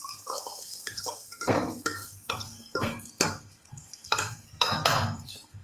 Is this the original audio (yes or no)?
no